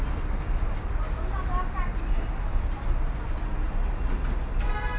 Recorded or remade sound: recorded